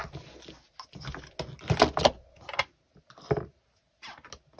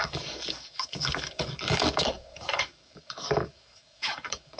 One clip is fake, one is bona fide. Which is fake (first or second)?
second